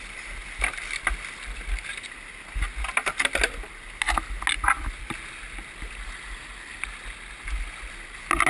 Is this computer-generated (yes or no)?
no